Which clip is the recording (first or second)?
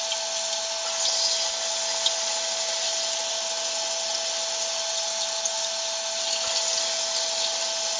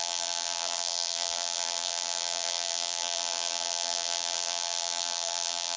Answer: first